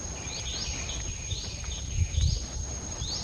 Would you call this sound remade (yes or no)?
no